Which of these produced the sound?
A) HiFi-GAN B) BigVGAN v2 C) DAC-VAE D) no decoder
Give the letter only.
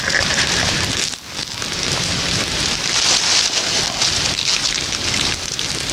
D